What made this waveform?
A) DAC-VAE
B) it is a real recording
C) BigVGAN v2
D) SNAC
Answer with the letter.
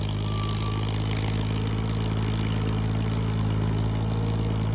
B